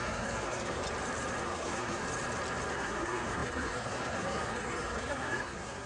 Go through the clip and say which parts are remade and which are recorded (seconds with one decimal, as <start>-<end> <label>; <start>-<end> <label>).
0.0-0.8 remade; 0.8-1.4 recorded; 1.4-2.0 remade; 2.0-2.7 recorded; 2.7-5.9 remade